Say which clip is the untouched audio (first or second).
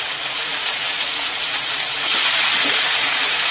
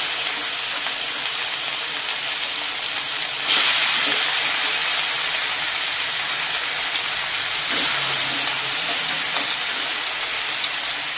second